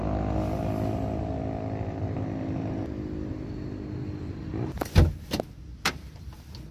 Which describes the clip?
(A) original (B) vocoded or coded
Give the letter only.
A